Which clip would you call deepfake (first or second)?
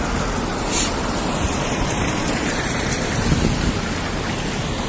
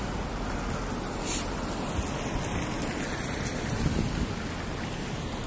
first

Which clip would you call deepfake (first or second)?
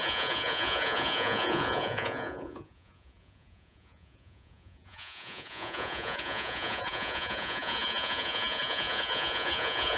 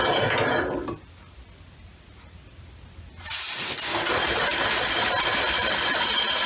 first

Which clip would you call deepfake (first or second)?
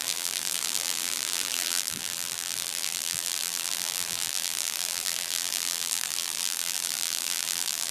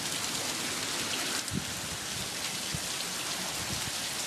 first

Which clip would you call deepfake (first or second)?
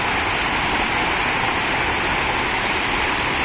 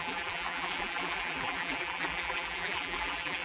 second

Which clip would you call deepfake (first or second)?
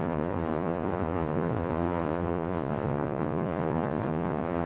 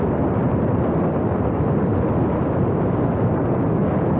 first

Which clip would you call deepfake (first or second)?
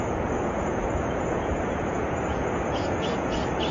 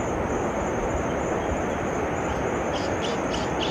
first